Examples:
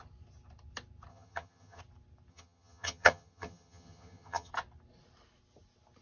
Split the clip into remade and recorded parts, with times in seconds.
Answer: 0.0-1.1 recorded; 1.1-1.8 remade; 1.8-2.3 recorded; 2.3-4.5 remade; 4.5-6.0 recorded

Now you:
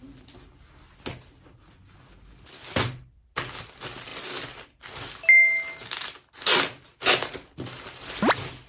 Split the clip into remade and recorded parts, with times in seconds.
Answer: 0.0-8.7 recorded

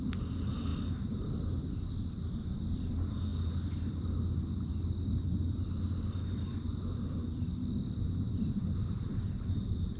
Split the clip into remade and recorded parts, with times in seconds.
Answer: 0.0-10.0 recorded